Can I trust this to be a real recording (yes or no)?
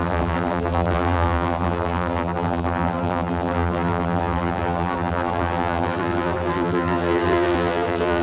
no